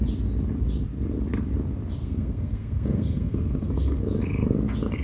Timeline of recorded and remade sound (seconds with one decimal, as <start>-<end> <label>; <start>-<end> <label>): 0.0-2.0 recorded; 2.0-4.0 remade; 4.0-5.0 recorded

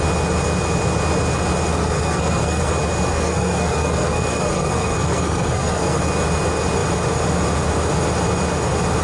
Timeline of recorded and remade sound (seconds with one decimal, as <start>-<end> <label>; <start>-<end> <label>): 0.0-1.7 recorded; 1.7-2.7 remade; 2.7-3.1 recorded; 3.1-6.0 remade; 6.0-9.0 recorded

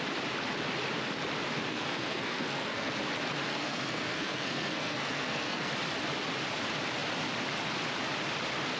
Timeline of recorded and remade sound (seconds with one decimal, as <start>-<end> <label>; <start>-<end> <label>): 0.0-1.7 recorded; 1.7-2.9 remade; 2.9-3.5 recorded; 3.5-5.7 remade; 5.7-8.8 recorded

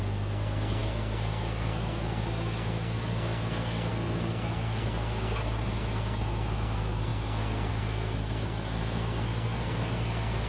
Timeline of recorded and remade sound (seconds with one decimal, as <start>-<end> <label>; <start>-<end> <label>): 0.0-10.5 remade

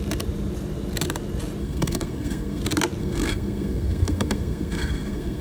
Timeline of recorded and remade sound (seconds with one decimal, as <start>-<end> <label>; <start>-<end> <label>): 0.0-1.6 recorded; 1.6-2.6 remade; 2.6-3.0 recorded; 3.0-5.4 remade

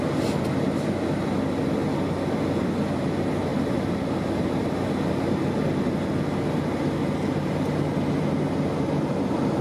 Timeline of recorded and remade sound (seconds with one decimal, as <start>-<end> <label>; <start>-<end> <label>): 0.0-9.6 recorded